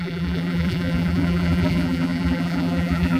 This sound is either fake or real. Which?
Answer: fake